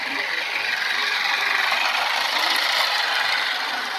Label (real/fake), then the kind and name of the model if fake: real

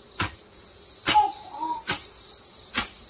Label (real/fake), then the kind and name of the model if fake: real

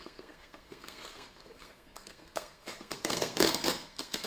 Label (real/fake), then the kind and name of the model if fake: fake, codec, SNAC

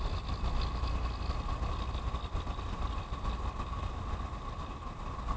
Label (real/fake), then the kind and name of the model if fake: real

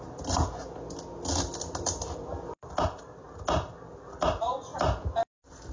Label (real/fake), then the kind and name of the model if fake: real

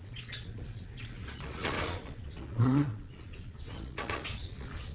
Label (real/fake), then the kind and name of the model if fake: fake, vocoder, Vocos